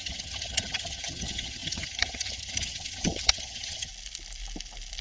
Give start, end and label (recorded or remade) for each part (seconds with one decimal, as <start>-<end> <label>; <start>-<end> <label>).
0.0-3.9 remade; 3.9-5.0 recorded